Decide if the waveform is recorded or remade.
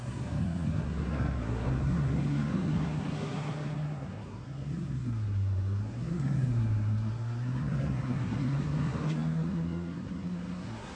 remade